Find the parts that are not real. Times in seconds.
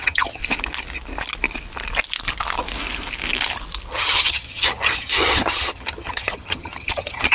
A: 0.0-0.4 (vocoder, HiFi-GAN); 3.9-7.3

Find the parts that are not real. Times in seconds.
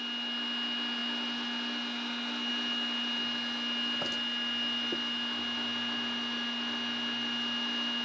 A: none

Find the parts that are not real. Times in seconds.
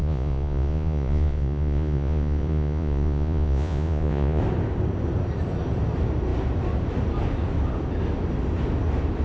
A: 0.0-4.4 (vocoder, Vocos)